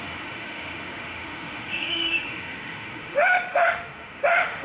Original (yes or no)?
no